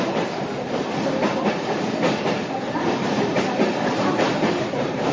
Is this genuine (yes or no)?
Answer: no